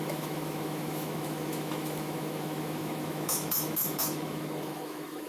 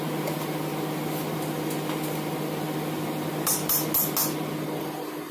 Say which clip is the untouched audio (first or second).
second